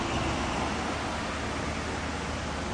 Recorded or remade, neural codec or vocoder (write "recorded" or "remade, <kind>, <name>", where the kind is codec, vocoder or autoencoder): recorded